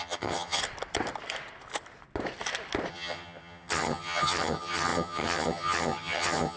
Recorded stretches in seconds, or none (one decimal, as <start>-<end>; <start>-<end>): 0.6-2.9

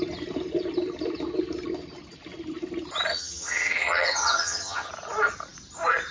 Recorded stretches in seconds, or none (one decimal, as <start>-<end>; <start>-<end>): 0.0-3.1; 4.9-6.1

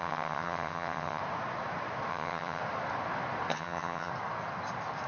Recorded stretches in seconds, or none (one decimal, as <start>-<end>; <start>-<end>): 1.2-2.1; 2.6-3.5; 4.1-5.1